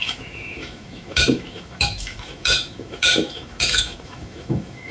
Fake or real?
fake